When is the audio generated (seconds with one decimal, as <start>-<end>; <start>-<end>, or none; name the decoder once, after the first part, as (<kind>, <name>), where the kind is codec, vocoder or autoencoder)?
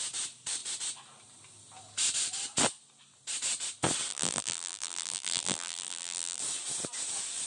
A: 4.1-6.4 (vocoder, BigVGAN v2)